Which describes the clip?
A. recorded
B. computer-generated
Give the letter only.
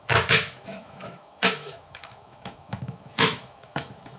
B